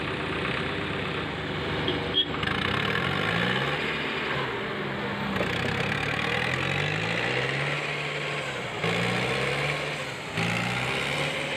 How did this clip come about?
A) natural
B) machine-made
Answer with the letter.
A